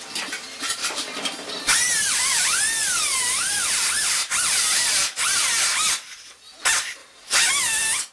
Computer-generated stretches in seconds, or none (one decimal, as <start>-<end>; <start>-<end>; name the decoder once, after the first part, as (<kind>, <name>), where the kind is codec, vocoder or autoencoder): 0.8-2.6 (vocoder, BigVGAN v2); 3.1-3.6; 7.0-7.5